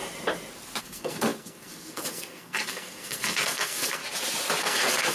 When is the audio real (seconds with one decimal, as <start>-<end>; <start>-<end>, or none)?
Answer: 0.0-0.8; 4.0-4.6